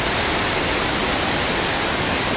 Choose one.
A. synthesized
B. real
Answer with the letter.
B